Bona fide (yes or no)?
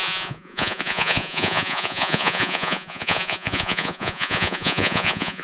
no